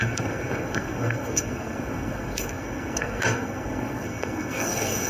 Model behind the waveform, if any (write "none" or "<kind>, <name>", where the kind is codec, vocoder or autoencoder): codec, SNAC